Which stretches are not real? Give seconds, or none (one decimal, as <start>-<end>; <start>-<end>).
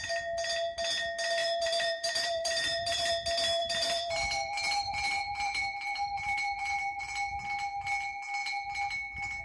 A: 1.4-3.1; 3.6-7.0